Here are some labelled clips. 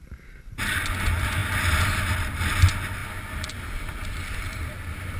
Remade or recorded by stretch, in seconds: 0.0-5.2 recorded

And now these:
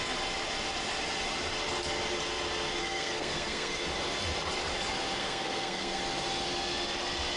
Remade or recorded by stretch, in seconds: 0.0-2.8 recorded; 2.8-3.8 remade; 3.8-5.2 recorded; 5.2-6.0 remade; 6.0-7.4 recorded